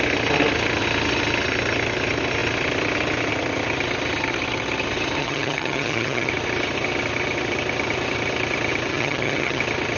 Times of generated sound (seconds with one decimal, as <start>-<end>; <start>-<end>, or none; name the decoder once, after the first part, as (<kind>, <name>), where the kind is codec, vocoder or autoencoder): 5.2-6.3 (vocoder, HiFi-GAN); 8.9-9.6

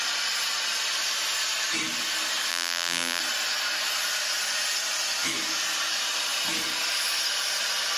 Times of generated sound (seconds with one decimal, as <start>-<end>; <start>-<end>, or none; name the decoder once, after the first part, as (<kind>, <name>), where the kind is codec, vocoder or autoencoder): 2.5-3.2 (vocoder, BigVGAN v2)

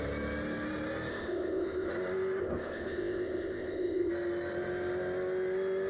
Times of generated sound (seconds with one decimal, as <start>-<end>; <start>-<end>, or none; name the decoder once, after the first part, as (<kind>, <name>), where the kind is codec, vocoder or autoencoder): 1.1-1.9 (codec, ZipCodec); 2.4-4.1

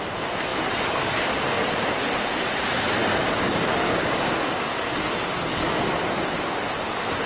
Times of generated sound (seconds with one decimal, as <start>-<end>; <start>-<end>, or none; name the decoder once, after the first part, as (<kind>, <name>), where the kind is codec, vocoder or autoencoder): 3.0-4.7 (codec, DAC)

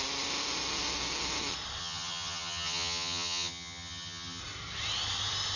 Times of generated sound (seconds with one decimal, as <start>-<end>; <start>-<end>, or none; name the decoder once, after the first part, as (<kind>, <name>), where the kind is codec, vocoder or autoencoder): 1.8-4.4 (vocoder, HiFi-GAN)

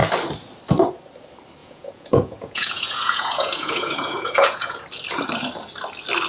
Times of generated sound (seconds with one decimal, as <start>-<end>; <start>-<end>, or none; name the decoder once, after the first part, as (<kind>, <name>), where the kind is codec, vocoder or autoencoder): 1.6-4.8 (vocoder, Vocos)

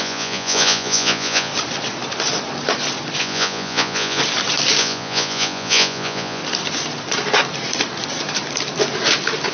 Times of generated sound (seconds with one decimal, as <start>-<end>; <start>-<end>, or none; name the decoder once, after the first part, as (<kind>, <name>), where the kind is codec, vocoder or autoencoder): 0.0-1.5 (vocoder, Vocos); 3.2-4.2; 4.8-6.4

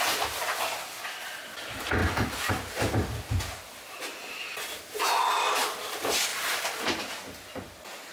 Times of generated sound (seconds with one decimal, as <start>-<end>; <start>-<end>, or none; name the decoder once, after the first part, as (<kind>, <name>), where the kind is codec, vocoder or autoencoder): 2.0-2.5 (vocoder, BigVGAN v2); 6.3-7.0